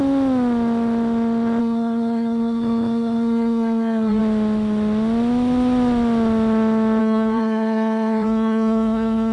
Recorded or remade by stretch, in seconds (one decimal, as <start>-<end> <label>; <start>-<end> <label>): 0.0-1.6 recorded; 1.6-4.2 remade; 4.2-7.0 recorded; 7.0-9.3 remade